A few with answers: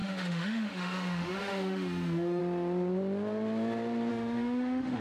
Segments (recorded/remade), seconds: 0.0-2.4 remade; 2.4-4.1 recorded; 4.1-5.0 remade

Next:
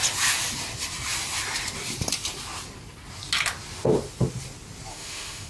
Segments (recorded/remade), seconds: 0.0-4.9 recorded; 4.9-5.5 remade

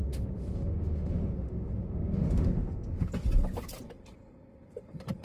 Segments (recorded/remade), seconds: 0.0-3.1 remade; 3.1-5.2 recorded